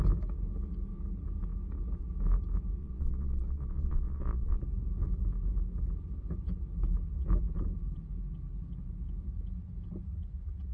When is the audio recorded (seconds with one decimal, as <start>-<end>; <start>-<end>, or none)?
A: 0.0-2.8; 4.6-10.7